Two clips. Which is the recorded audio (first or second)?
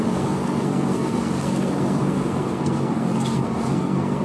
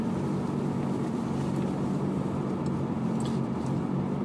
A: second